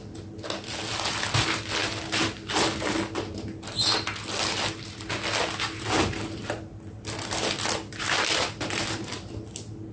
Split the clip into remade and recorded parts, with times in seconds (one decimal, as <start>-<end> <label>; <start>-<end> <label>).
0.0-9.9 recorded